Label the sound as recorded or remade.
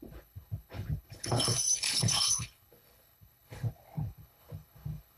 remade